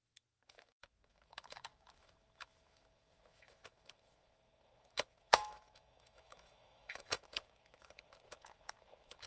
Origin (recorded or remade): remade